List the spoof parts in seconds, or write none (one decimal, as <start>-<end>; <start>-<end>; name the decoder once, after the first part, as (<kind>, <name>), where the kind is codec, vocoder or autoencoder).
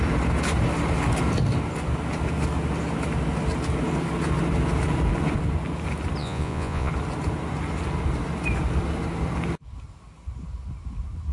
6.2-6.9 (vocoder, Vocos)